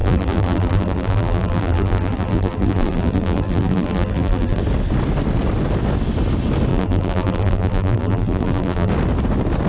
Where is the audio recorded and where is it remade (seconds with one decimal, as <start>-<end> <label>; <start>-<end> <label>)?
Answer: 0.0-4.6 remade; 4.6-6.7 recorded; 6.7-8.9 remade; 8.9-9.7 recorded